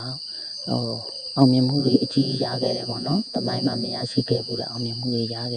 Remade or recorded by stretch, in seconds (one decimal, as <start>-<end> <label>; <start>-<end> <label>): 0.0-1.8 recorded; 1.8-4.6 remade; 4.6-5.6 recorded